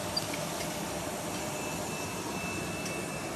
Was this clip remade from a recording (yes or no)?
no